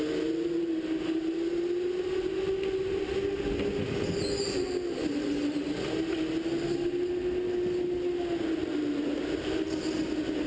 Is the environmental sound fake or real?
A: real